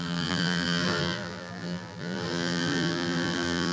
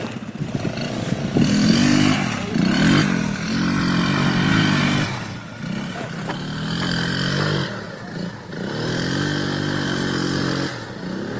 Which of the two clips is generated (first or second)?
first